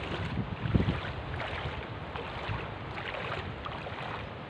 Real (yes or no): yes